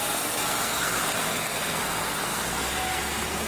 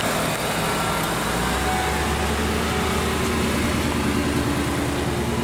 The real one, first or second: second